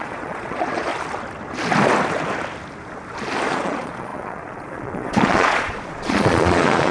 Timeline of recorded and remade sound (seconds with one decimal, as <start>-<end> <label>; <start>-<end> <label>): 0.0-0.9 remade; 0.9-3.5 recorded; 3.5-6.9 remade